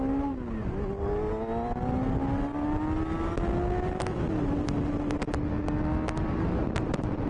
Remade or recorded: recorded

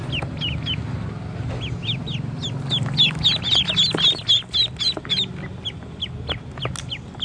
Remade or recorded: recorded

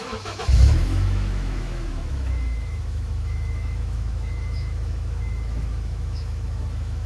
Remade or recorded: remade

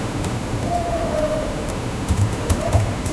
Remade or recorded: remade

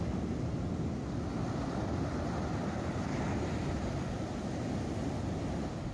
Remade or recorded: recorded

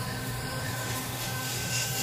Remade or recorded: remade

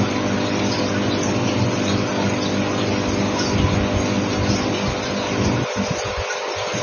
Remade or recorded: recorded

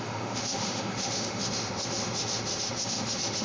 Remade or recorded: remade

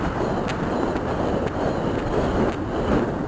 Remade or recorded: recorded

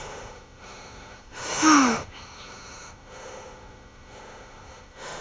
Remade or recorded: remade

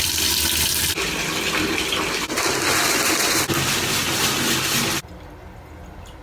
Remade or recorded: recorded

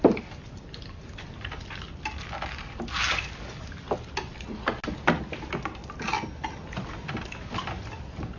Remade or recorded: recorded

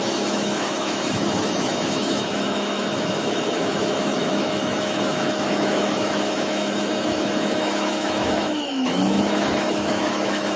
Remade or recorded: remade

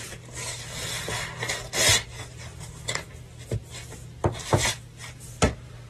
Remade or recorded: recorded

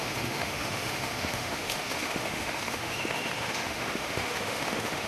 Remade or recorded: remade